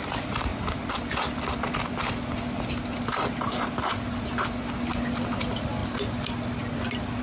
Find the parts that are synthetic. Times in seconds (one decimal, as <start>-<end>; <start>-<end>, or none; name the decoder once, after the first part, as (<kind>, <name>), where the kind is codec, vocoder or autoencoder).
none

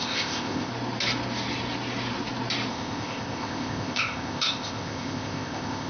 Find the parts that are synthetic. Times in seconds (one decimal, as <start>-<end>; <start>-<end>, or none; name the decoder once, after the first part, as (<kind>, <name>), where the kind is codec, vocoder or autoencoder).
0.0-0.7 (codec, ZipCodec); 2.7-5.9

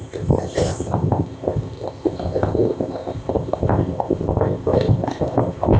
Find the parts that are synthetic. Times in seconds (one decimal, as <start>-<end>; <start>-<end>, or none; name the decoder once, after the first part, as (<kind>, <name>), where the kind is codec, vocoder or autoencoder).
0.0-5.8 (codec, ZipCodec)

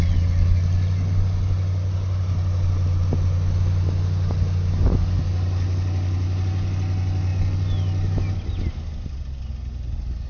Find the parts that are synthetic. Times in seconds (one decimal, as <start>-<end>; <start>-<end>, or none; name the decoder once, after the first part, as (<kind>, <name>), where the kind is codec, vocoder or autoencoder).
none

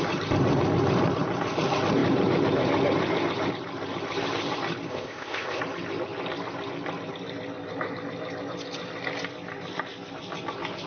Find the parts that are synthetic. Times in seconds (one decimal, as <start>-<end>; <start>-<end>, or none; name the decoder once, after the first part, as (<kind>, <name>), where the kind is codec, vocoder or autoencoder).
4.9-5.6 (codec, ZipCodec)

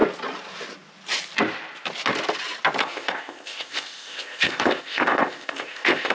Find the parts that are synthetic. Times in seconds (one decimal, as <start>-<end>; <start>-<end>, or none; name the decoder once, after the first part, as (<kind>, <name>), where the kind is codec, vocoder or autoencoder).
2.8-6.1 (codec, ZipCodec)